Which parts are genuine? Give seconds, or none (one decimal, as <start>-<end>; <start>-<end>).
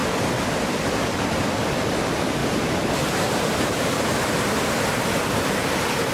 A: 0.0-6.1